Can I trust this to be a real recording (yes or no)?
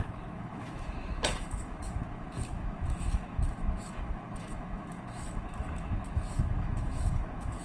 no